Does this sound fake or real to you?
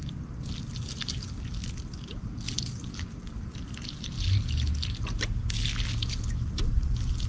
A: real